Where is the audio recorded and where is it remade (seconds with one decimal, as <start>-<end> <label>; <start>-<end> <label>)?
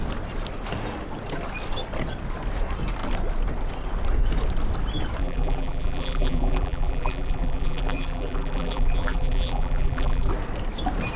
0.0-5.2 recorded; 5.2-10.3 remade; 10.3-11.2 recorded